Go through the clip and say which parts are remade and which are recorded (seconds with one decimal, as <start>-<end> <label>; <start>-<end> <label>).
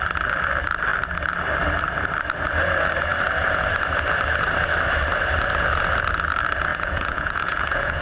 0.0-6.7 recorded; 6.7-8.0 remade